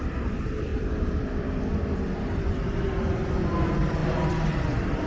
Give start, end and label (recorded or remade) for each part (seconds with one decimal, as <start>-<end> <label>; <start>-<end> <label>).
0.0-5.1 remade